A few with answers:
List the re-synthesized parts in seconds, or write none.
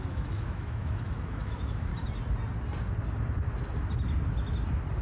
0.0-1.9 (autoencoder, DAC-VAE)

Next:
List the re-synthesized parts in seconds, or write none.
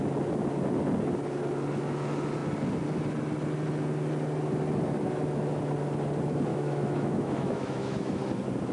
6.5-8.2 (autoencoder, DAC-VAE)